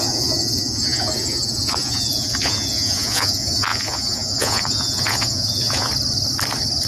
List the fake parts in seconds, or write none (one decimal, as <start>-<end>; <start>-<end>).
0.0-5.9